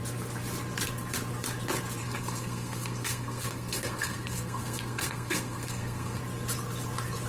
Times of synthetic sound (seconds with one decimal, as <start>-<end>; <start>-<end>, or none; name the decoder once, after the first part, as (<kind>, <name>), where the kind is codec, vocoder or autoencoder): 2.0-6.2 (codec, SNAC)